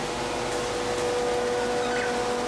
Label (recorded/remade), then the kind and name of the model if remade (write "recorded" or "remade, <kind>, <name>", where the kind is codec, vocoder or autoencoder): recorded